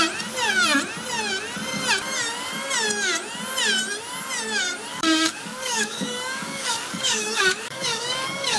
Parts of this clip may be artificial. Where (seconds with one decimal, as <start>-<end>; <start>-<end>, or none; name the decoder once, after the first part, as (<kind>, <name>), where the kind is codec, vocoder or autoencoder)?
4.9-8.6 (codec, DAC)